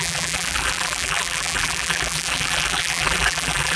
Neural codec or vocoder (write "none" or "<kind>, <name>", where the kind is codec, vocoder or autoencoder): vocoder, BigVGAN v2